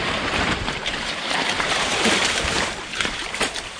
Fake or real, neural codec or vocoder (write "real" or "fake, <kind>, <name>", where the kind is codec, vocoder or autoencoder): fake, vocoder, BigVGAN v2